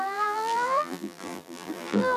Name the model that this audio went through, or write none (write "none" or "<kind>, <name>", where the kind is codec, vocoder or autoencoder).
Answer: vocoder, BigVGAN v2